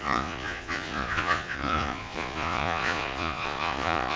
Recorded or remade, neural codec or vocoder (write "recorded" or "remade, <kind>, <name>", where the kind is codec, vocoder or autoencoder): remade, vocoder, Vocos